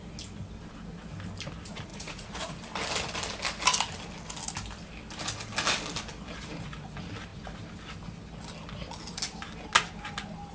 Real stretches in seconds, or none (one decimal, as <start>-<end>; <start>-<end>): 0.0-1.9; 2.5-10.5